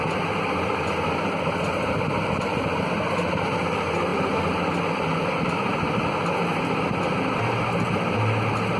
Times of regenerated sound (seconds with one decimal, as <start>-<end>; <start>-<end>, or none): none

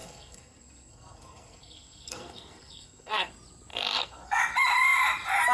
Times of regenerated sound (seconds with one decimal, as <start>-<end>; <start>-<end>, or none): 0.0-3.3; 3.7-4.4

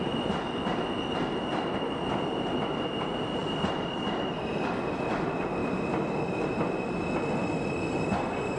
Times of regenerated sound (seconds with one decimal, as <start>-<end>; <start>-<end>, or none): none

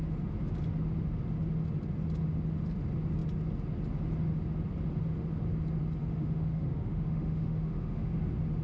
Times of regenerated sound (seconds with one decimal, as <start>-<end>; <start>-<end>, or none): 6.0-8.1

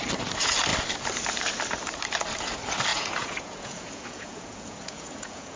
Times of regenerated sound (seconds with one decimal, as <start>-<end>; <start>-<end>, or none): 2.9-5.6